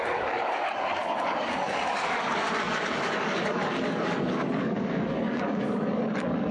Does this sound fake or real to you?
fake